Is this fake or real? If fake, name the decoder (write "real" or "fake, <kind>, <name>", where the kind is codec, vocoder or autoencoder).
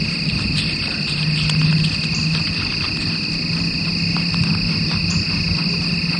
real